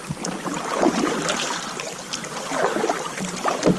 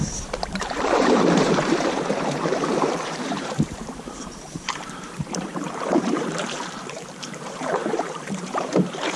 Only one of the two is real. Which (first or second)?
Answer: first